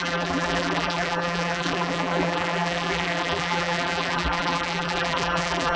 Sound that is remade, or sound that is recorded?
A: remade